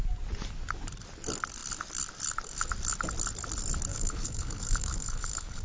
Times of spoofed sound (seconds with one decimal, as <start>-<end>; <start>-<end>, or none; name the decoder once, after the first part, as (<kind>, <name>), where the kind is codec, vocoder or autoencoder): 3.9-5.6 (codec, HILCodec)

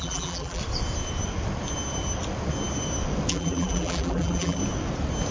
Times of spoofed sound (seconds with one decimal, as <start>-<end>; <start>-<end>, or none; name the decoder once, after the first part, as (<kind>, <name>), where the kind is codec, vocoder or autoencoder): 0.0-0.6 (vocoder, BigVGAN v2); 3.3-4.6

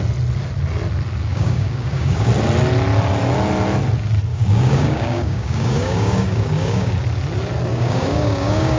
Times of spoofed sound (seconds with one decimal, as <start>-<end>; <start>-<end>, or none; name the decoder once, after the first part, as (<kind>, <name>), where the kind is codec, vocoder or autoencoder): 1.3-2.3 (codec, DAC); 4.3-6.9; 7.7-8.8

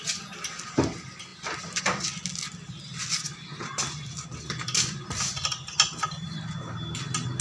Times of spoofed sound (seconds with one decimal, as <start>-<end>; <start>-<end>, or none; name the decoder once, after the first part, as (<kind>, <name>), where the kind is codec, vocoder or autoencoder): 1.3-1.8 (vocoder, BigVGAN v2)

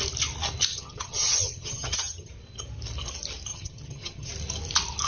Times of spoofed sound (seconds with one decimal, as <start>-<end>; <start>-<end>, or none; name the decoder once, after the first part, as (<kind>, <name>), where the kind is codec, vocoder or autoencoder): 0.7-2.3 (vocoder, HiFi-GAN); 3.5-4.3